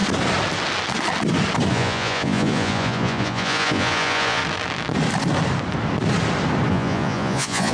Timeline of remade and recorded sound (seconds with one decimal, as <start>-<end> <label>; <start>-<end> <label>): 0.0-1.7 recorded; 1.7-4.4 remade; 4.4-6.7 recorded; 6.7-7.7 remade